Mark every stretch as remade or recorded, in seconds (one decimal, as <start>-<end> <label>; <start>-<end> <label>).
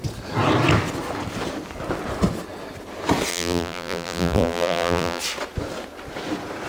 0.0-3.3 recorded; 3.3-5.2 remade; 5.2-6.7 recorded